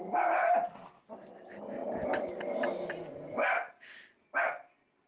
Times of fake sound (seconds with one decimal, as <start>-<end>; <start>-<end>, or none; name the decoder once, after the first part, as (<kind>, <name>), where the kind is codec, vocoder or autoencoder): none